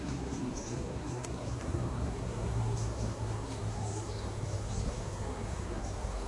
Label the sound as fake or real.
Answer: fake